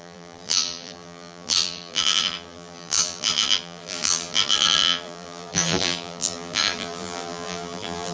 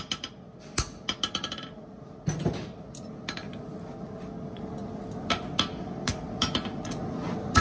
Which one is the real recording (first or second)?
second